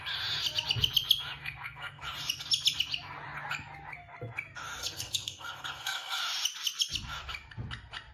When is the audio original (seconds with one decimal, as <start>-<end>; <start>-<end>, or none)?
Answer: 0.0-1.4; 2.0-4.8; 6.2-8.1